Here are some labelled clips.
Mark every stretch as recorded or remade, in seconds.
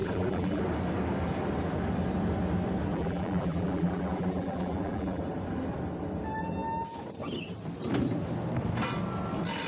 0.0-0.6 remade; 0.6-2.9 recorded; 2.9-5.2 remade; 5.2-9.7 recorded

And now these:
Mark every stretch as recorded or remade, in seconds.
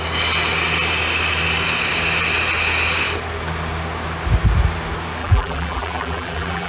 0.0-5.2 recorded; 5.2-6.7 remade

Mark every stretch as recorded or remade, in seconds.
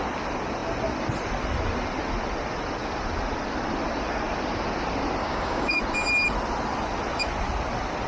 0.0-5.2 recorded; 5.2-5.8 remade; 5.8-8.1 recorded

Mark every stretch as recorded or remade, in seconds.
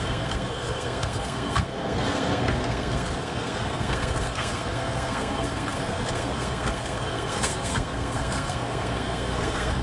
0.0-9.8 remade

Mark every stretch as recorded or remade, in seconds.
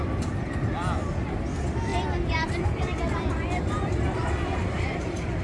0.0-1.9 recorded; 1.9-5.4 remade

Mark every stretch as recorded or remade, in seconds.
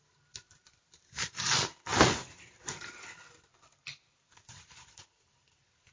0.0-5.9 recorded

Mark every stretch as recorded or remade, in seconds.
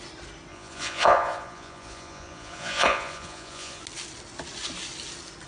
0.0-0.5 recorded; 0.5-3.8 remade; 3.8-5.5 recorded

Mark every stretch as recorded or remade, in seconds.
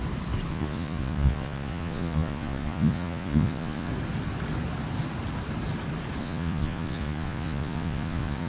0.0-0.5 recorded; 0.5-3.9 remade; 3.9-6.2 recorded; 6.2-8.5 remade